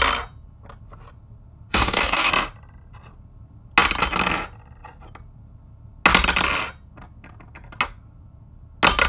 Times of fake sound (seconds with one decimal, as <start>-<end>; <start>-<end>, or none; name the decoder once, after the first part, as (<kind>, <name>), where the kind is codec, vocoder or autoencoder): 1.7-2.3 (codec, DAC)